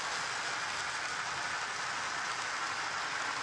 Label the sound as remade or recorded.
recorded